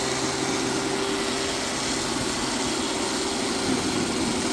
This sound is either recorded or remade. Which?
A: recorded